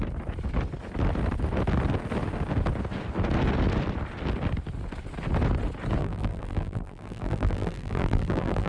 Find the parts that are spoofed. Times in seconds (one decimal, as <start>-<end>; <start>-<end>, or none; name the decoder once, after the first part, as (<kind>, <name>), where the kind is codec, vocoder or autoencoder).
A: 6.0-8.7 (vocoder, BigVGAN v2)